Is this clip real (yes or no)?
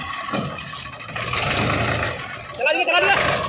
yes